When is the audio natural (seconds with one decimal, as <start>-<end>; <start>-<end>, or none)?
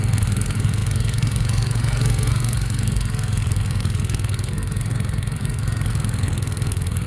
none